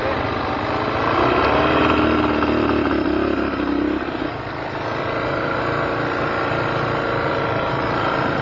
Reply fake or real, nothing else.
real